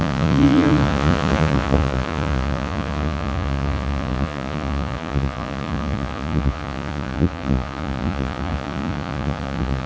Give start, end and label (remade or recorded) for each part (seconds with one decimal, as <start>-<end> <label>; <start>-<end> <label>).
0.0-9.9 remade